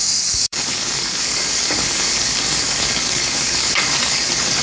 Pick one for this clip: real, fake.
fake